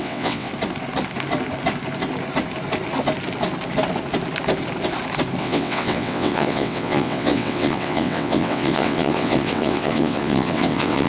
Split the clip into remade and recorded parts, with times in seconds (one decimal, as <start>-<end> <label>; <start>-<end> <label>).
0.0-0.5 remade; 0.5-5.4 recorded; 5.4-11.1 remade

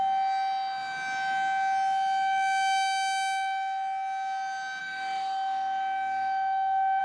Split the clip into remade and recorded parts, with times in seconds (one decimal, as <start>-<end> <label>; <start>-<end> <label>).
0.0-4.8 recorded; 4.8-7.0 remade

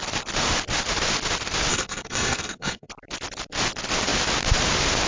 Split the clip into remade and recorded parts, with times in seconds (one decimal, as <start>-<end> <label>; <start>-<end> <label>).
0.0-1.7 recorded; 1.7-2.9 remade; 2.9-5.1 recorded

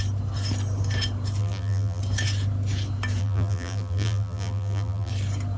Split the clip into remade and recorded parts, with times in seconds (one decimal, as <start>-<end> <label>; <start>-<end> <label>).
0.0-1.4 recorded; 1.4-2.0 remade; 2.0-3.2 recorded; 3.2-5.1 remade; 5.1-5.6 recorded

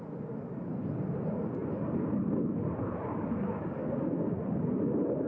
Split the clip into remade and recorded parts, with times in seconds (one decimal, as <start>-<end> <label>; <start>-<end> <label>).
0.0-5.3 recorded

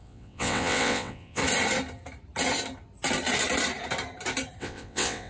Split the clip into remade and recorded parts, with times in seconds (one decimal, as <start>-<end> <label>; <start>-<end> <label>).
0.0-1.4 remade; 1.4-4.6 recorded; 4.6-5.3 remade

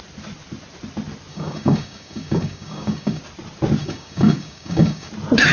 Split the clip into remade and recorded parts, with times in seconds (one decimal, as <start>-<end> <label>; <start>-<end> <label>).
0.0-1.3 recorded; 1.3-3.2 remade; 3.2-3.8 recorded; 3.8-5.1 remade; 5.1-5.5 recorded

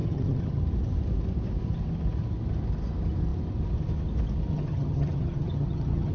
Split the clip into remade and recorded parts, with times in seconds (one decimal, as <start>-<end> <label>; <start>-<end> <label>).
0.0-0.6 remade; 0.6-4.5 recorded; 4.5-6.1 remade